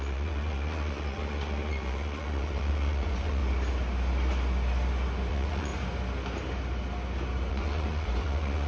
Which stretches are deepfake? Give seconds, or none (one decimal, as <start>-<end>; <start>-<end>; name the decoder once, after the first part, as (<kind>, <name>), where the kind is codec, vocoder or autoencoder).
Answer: 0.0-3.4 (vocoder, Vocos); 5.3-5.7; 7.5-8.7